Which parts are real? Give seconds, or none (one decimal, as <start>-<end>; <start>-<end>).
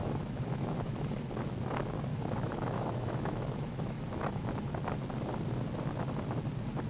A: 1.1-2.1; 4.5-6.9